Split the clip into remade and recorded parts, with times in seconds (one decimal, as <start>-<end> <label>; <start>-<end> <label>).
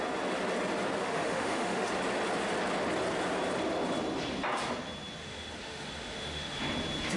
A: 0.0-1.0 recorded; 1.0-1.9 remade; 1.9-5.2 recorded; 5.2-6.6 remade; 6.6-7.2 recorded